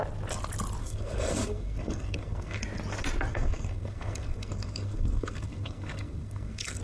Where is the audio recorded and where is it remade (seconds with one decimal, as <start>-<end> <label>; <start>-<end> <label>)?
0.0-0.8 recorded; 0.8-2.6 remade; 2.6-3.3 recorded; 3.3-6.8 remade